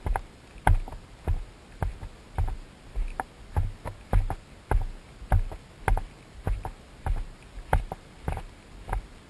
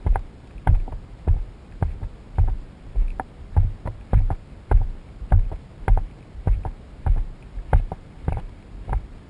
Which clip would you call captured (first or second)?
first